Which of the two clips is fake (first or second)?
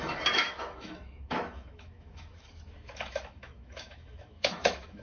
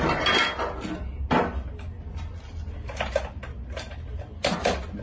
first